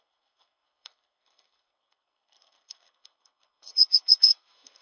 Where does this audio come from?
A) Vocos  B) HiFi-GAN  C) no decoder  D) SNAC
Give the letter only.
D